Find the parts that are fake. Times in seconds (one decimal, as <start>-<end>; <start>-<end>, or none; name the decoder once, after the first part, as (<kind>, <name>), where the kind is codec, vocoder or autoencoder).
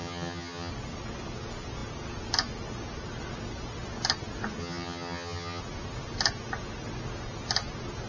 0.0-0.7 (vocoder, HiFi-GAN); 4.6-5.6